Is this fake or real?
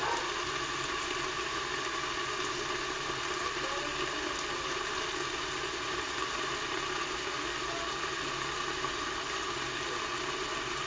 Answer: real